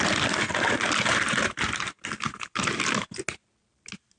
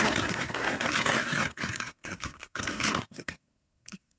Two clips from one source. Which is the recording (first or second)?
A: first